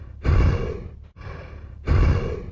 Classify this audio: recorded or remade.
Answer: recorded